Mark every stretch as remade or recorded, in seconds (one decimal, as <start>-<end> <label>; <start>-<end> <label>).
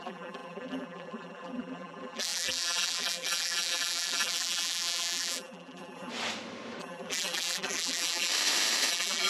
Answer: 0.0-6.1 remade; 6.1-6.8 recorded; 6.8-8.3 remade; 8.3-8.9 recorded; 8.9-9.3 remade